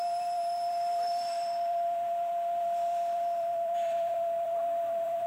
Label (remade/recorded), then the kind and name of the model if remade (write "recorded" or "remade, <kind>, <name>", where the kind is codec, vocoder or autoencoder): remade, vocoder, BigVGAN v2